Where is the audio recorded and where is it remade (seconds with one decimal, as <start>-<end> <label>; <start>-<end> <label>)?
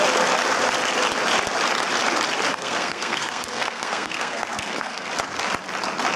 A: 0.0-2.5 recorded; 2.5-5.1 remade; 5.1-6.2 recorded